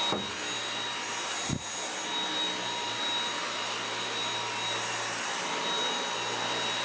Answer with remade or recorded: recorded